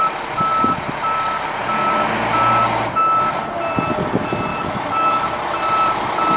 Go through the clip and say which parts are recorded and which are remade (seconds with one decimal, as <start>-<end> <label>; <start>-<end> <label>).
0.0-4.5 recorded; 4.5-5.2 remade; 5.2-6.4 recorded